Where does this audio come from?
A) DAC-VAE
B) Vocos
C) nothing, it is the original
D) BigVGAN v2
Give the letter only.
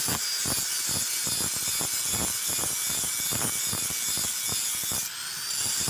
C